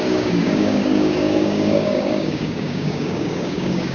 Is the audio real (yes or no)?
no